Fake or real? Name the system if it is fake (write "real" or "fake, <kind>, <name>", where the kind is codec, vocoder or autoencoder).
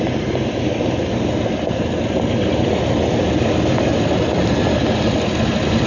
real